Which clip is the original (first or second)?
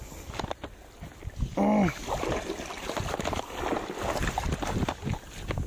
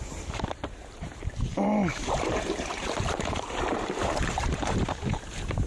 first